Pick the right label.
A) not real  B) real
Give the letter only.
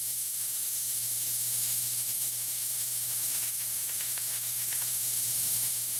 A